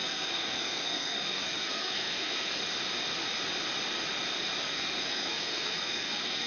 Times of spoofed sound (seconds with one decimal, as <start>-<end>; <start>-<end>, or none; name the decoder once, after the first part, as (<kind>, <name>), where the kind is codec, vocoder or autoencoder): 0.0-2.6 (codec, SNAC); 4.6-6.5